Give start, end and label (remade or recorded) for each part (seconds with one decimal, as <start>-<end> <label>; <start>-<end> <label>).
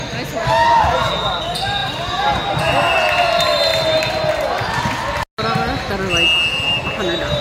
0.0-7.4 recorded